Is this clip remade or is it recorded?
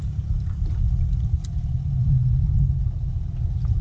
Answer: recorded